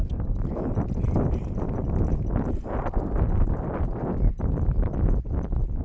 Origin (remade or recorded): recorded